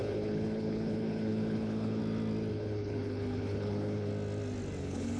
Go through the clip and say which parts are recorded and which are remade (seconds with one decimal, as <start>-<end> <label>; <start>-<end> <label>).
0.0-2.0 remade; 2.0-2.5 recorded; 2.5-4.1 remade; 4.1-4.8 recorded; 4.8-5.2 remade